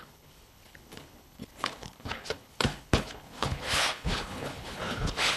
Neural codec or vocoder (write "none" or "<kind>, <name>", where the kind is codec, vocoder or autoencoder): codec, HILCodec